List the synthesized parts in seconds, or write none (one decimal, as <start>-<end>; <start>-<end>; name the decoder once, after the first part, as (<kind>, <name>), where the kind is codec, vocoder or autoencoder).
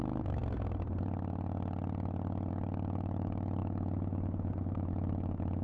0.0-0.4 (autoencoder, DAC-VAE); 2.5-5.6